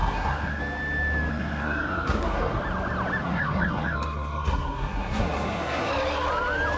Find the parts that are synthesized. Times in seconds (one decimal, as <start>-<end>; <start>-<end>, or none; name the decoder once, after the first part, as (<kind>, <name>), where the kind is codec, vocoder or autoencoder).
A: 0.0-0.6 (codec, SNAC); 1.3-2.6; 3.2-5.9

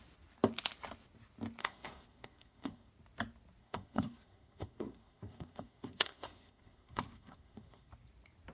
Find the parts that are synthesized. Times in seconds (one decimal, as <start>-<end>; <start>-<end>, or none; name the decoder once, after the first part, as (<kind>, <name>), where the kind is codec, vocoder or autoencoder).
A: 1.6-2.9 (codec, SNAC); 3.6-7.9

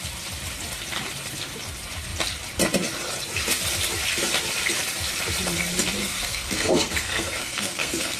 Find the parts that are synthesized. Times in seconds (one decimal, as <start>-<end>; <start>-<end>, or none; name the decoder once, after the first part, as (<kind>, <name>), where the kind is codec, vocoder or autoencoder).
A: 6.0-8.2 (codec, SNAC)

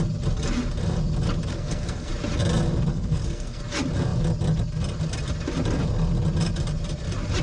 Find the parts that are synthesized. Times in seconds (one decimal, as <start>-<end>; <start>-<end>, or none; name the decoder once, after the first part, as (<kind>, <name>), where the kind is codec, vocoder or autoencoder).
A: 1.5-2.1 (codec, SNAC); 2.9-3.6

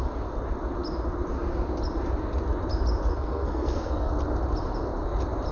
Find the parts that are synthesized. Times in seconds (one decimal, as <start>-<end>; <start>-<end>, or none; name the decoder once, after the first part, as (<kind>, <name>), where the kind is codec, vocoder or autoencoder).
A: 3.1-4.1 (codec, SNAC)